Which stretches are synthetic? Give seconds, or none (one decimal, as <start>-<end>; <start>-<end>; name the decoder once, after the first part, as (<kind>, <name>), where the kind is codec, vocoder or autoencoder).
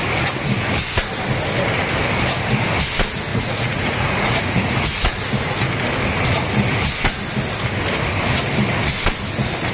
3.3-5.2 (vocoder, Vocos)